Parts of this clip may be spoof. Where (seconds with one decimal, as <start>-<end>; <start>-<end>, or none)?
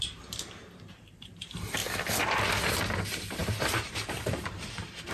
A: 0.0-1.8; 2.4-5.1